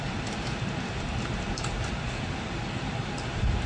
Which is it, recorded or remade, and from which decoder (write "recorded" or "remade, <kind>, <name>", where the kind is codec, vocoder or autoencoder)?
remade, vocoder, BigVGAN v2